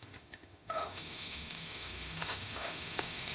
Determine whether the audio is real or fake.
fake